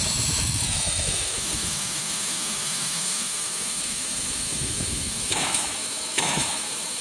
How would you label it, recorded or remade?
remade